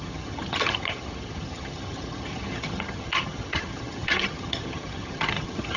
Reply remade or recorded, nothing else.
remade